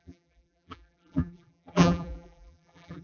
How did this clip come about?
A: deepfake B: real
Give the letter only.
A